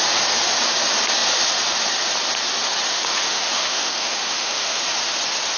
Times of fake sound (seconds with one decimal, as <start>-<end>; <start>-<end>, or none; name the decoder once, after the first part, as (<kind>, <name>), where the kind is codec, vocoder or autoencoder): 2.9-4.8 (autoencoder, DAC-VAE)